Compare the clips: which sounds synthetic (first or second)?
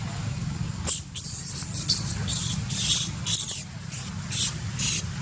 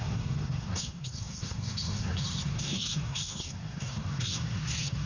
second